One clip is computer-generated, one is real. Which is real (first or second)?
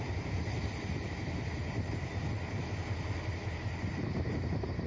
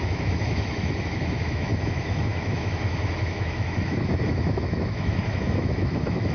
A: first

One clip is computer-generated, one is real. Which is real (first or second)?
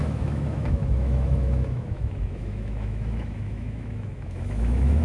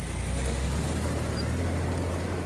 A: second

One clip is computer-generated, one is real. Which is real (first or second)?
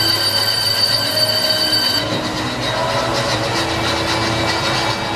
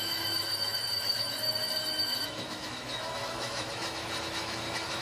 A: first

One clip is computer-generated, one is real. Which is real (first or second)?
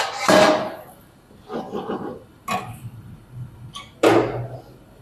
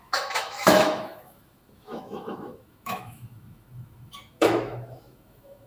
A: first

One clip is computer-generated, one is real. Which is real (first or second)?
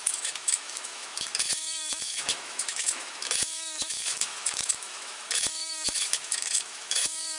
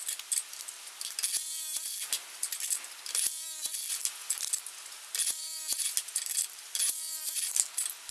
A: second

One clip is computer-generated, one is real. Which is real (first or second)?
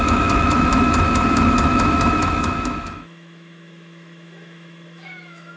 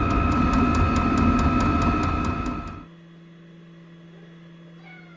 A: second